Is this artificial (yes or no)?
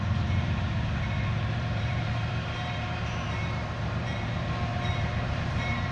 yes